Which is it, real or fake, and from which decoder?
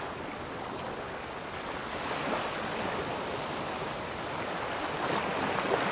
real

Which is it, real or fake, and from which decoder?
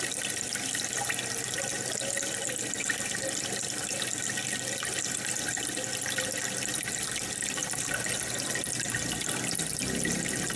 real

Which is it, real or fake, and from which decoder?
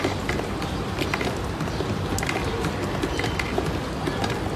real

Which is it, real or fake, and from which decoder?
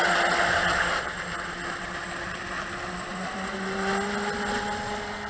real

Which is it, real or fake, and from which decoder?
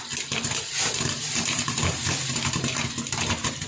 real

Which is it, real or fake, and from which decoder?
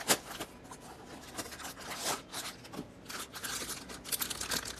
real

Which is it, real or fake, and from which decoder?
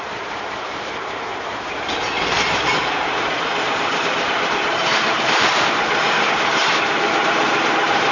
fake, vocoder, BigVGAN v2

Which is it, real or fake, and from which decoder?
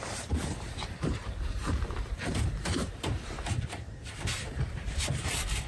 fake, vocoder, BigVGAN v2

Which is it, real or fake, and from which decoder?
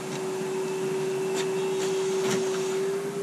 real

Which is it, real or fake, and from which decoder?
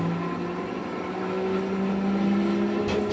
real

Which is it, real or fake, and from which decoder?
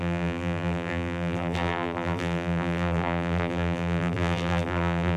fake, vocoder, BigVGAN v2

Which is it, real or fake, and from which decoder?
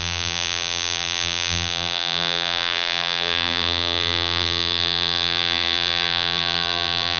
fake, vocoder, BigVGAN v2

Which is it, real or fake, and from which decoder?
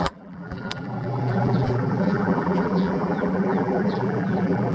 fake, vocoder, BigVGAN v2